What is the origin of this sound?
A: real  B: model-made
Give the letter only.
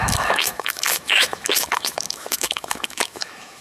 B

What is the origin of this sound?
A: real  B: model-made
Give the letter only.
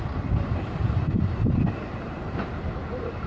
A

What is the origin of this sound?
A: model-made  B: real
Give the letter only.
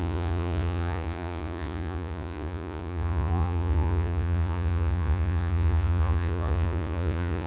A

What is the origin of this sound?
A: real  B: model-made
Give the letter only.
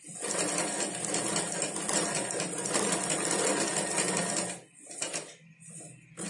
A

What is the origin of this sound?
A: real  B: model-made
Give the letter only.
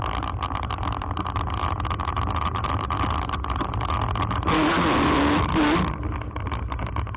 A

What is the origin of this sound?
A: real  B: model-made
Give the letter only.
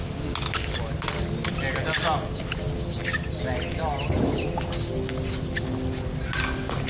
A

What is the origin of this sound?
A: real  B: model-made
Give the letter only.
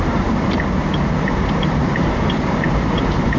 B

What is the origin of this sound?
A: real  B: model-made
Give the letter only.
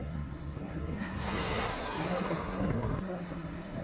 B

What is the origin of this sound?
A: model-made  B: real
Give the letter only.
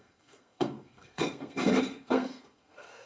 A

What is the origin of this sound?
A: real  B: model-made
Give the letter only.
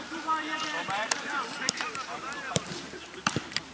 B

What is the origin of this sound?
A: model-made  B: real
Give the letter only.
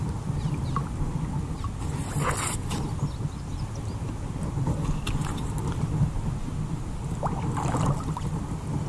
B